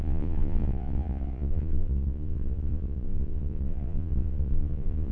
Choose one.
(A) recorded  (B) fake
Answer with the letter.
B